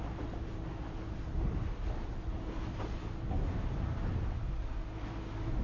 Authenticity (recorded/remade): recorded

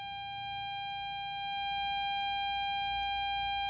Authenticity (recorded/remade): recorded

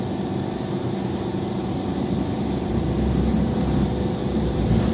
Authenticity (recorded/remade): recorded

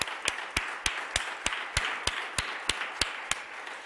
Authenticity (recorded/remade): recorded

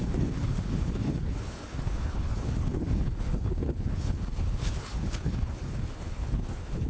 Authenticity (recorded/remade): remade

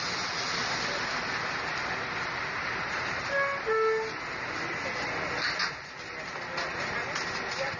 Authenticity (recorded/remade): recorded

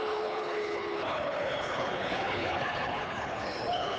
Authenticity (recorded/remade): remade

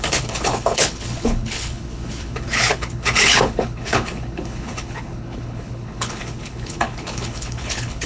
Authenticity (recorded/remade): remade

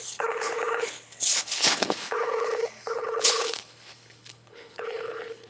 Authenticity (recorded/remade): remade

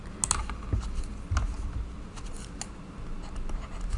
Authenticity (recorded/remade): recorded